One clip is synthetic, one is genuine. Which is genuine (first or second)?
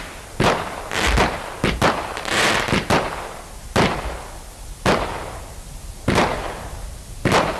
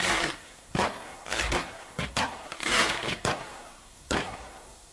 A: first